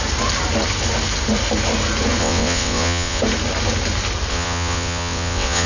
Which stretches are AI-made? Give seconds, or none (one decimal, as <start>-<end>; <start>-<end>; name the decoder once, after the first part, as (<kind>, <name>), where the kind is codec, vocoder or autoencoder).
2.2-3.2 (vocoder, WaveNeXt); 4.3-5.7